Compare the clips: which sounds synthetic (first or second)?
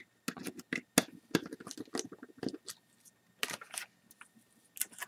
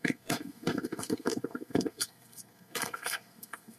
second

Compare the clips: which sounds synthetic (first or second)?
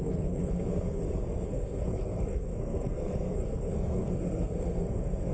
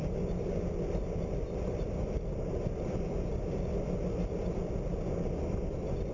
first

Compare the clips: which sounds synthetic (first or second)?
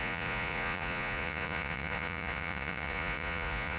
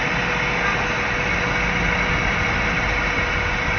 first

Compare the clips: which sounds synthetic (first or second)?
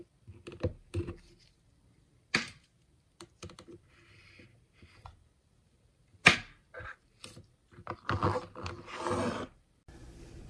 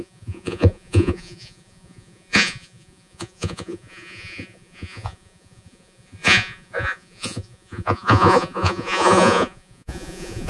second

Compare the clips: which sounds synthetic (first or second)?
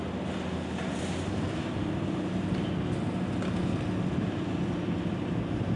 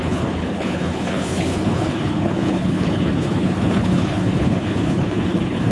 second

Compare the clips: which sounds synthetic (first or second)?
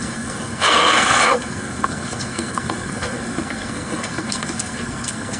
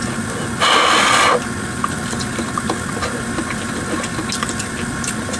first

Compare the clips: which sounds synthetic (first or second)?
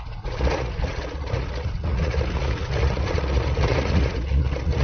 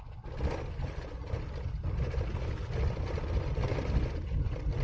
first